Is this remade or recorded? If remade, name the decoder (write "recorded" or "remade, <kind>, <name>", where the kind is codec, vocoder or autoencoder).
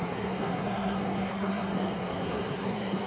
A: remade, codec, SNAC